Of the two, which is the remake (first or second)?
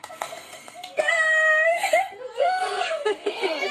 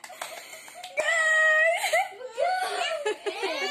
first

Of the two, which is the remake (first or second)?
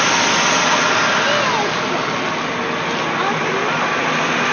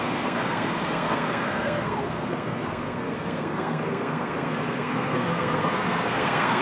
second